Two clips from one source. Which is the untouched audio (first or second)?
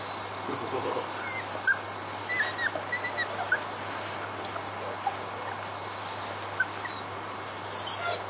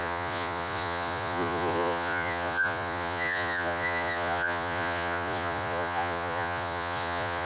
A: first